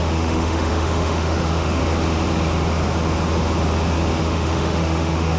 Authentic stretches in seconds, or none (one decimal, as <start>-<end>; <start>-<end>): 1.8-4.2